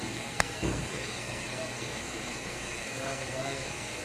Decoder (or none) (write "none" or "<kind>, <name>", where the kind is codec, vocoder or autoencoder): codec, SNAC